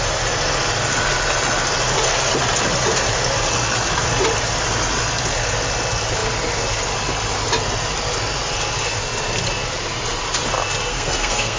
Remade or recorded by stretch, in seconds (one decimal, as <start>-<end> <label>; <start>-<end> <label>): 0.0-10.9 recorded; 10.9-11.6 remade